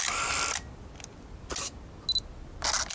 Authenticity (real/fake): real